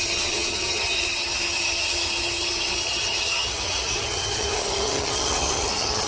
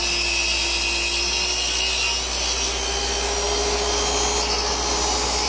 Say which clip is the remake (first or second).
first